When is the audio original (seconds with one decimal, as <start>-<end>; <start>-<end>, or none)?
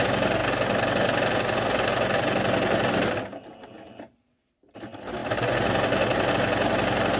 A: 0.0-7.2